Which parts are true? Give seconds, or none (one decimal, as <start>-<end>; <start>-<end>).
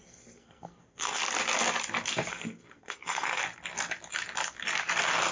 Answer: 1.2-2.3; 3.4-5.3